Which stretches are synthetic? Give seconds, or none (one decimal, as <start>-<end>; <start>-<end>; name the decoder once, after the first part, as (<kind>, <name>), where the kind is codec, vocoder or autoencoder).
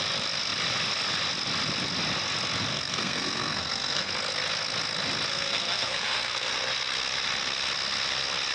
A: 2.7-4.1 (codec, SNAC); 5.3-6.5